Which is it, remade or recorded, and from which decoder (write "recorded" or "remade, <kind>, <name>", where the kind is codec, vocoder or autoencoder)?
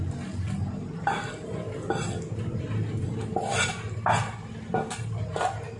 recorded